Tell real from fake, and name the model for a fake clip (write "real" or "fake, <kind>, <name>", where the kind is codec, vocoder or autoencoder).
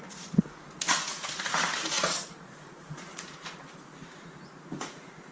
fake, vocoder, Vocos